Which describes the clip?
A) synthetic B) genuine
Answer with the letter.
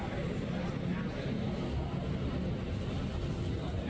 B